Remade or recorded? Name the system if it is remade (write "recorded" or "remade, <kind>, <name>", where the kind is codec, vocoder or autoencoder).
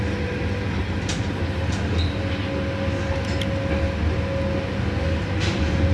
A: recorded